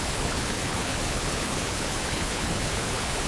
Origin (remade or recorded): remade